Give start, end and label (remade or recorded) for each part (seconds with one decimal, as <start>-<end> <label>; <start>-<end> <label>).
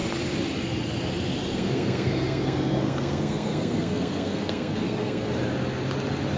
0.0-1.5 recorded; 1.5-5.3 remade; 5.3-6.4 recorded